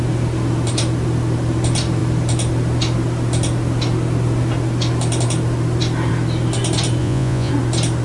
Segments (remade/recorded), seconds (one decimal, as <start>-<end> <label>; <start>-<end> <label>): 0.0-7.0 recorded; 7.0-7.5 remade; 7.5-8.0 recorded